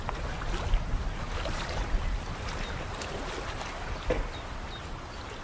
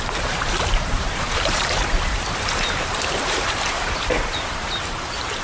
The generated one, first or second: second